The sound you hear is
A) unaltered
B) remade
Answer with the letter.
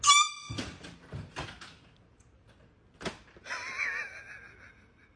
A